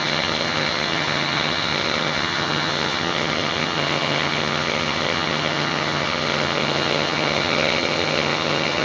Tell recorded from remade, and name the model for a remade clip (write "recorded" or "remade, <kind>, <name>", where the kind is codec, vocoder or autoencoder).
remade, vocoder, HiFi-GAN